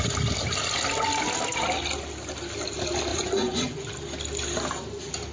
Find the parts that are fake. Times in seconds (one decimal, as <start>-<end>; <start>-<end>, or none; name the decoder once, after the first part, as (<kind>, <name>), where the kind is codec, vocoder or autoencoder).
3.1-3.9 (vocoder, Vocos)